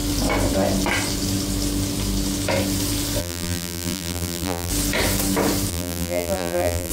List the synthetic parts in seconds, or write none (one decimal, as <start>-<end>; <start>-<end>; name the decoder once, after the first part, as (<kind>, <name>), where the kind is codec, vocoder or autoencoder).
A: 3.2-4.7 (vocoder, BigVGAN v2); 5.7-6.9